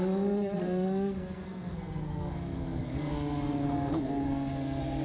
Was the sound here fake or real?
fake